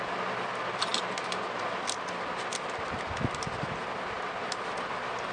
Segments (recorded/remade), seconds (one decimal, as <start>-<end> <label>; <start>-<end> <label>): 0.0-5.3 recorded